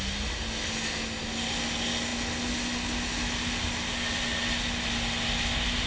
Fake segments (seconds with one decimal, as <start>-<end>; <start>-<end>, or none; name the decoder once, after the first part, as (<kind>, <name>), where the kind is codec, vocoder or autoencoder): none